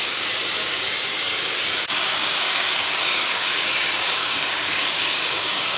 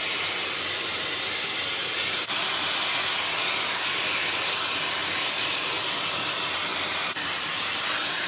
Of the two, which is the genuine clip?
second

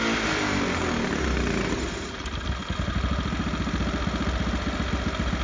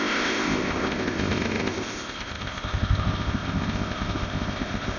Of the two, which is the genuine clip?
first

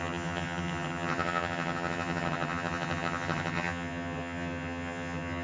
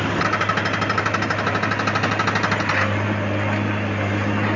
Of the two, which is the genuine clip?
second